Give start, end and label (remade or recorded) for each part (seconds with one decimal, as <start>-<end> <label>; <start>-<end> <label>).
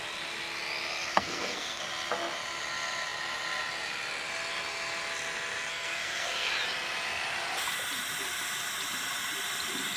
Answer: 0.0-1.1 recorded; 1.1-1.8 remade; 1.8-5.7 recorded; 5.7-6.5 remade; 6.5-10.0 recorded